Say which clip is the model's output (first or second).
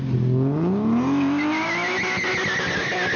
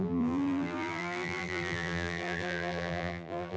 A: second